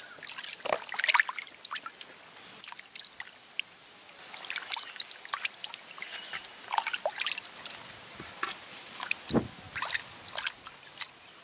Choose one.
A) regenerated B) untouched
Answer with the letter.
B